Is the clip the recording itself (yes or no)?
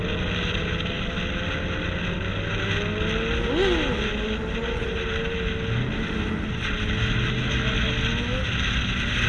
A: yes